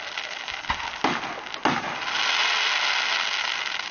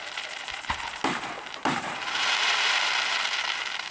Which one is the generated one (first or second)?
second